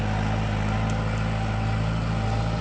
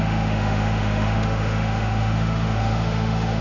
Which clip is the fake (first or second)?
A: second